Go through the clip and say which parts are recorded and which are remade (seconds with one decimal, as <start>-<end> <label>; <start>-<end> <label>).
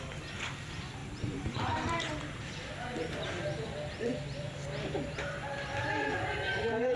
0.0-1.0 recorded; 1.0-3.4 remade; 3.4-7.0 recorded